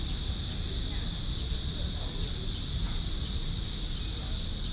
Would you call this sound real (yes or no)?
yes